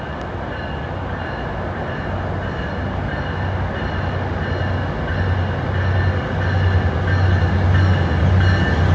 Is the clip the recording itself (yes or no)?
yes